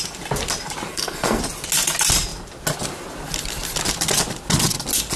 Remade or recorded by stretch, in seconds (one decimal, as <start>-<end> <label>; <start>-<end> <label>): 0.0-0.9 recorded; 0.9-1.4 remade; 1.4-5.2 recorded